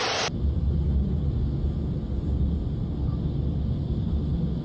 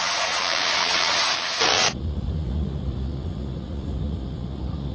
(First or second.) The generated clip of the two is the second